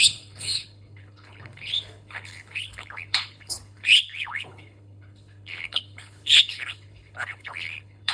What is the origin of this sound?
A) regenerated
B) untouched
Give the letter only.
A